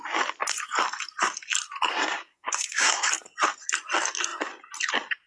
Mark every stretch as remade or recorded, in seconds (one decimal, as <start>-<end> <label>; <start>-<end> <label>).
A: 0.0-1.9 recorded; 1.9-3.1 remade; 3.1-5.3 recorded